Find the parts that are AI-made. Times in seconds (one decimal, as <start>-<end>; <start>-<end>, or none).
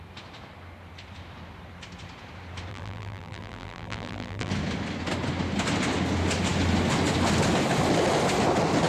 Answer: 2.7-4.5